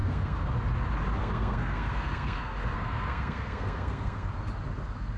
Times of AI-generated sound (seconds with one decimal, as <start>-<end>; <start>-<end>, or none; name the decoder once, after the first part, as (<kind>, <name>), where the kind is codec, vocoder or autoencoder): 0.0-0.5 (codec, SNAC); 1.2-4.3